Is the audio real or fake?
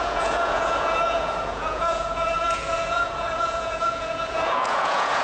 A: fake